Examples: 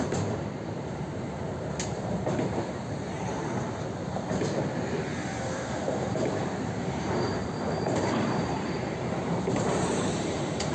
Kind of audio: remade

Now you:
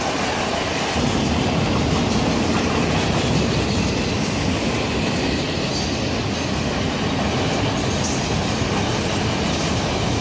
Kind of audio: recorded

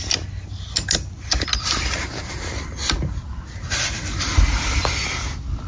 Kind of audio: recorded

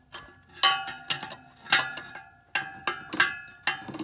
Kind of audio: recorded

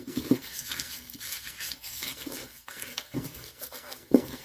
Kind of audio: remade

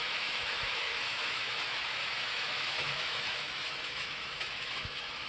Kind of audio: remade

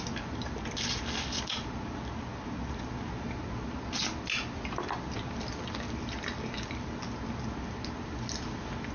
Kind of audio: recorded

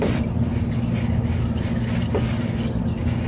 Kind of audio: recorded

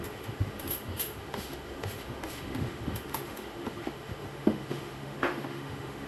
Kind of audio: remade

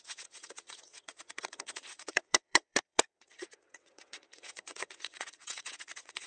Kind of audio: remade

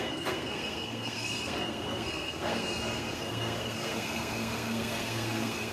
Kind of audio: remade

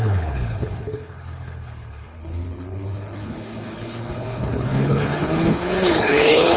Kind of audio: remade